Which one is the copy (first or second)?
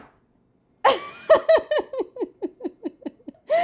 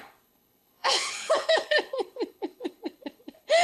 second